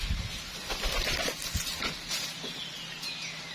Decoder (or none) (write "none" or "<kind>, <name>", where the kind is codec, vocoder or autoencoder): none